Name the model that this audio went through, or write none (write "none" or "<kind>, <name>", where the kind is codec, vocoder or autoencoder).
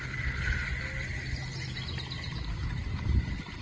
none